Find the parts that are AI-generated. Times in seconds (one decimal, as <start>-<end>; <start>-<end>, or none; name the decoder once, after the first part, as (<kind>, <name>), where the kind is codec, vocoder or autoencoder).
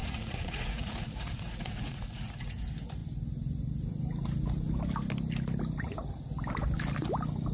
0.0-2.6 (vocoder, Vocos)